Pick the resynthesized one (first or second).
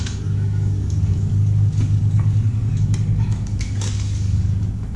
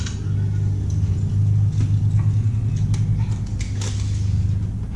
first